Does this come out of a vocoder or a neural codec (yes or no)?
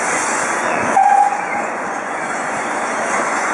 yes